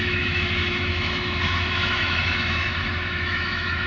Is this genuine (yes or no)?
no